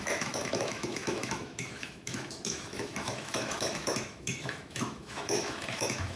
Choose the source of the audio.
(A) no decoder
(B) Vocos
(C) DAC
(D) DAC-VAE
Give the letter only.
D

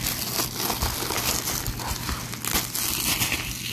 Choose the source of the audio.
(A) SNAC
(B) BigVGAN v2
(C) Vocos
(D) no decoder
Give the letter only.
D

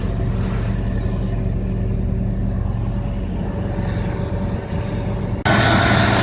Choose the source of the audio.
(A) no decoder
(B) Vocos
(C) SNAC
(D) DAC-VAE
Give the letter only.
A